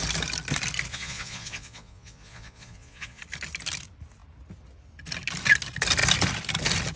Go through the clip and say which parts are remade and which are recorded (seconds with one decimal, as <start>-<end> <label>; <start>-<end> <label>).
0.0-0.9 recorded; 0.9-3.2 remade; 3.2-7.0 recorded